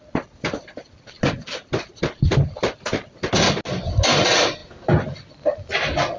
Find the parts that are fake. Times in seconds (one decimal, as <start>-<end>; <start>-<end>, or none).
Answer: none